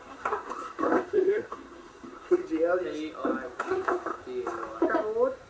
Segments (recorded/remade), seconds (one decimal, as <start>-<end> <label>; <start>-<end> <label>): 0.0-2.4 remade; 2.4-3.6 recorded; 3.6-4.2 remade; 4.2-5.5 recorded